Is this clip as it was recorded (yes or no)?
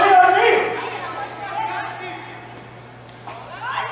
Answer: yes